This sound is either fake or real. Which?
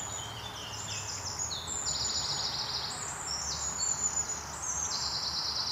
real